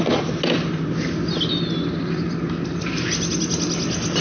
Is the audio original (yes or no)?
yes